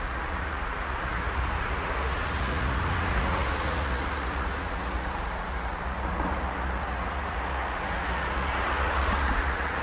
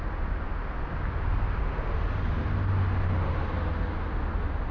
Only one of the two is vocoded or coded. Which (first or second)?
first